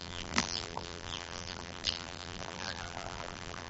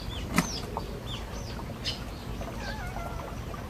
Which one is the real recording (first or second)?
second